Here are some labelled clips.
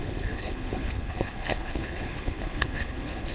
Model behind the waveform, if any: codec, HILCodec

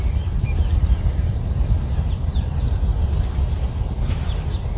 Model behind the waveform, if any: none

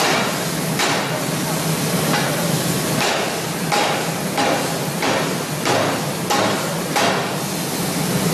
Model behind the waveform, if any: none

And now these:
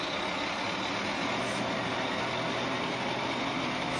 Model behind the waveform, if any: none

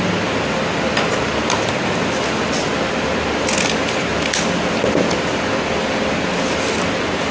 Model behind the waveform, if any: none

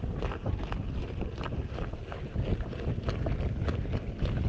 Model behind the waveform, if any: none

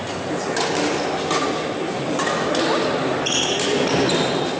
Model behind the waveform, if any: none